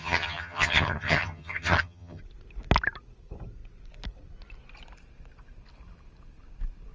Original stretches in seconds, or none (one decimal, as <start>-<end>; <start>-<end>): 2.2-6.9